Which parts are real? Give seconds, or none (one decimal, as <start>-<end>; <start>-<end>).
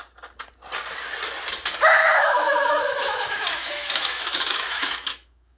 0.0-2.0